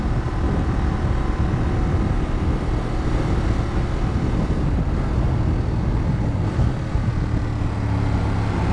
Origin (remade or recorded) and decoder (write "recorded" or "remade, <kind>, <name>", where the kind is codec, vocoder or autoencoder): recorded